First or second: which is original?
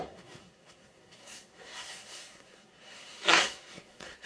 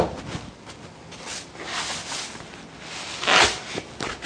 second